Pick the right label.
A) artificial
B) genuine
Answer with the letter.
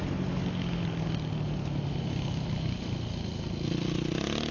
B